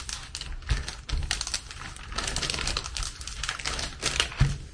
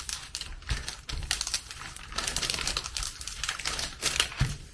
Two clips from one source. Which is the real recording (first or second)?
first